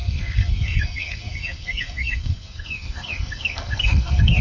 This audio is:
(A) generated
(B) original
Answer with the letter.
A